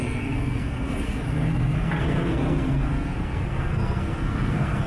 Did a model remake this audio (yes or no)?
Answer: yes